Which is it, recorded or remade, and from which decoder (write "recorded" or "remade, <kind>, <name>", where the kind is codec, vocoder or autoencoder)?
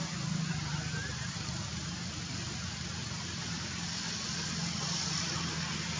recorded